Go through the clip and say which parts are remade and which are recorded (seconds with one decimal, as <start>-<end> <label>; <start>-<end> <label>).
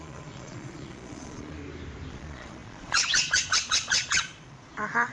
0.0-1.6 remade; 1.6-2.1 recorded; 2.1-5.1 remade